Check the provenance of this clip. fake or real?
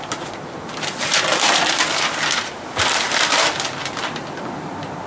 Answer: real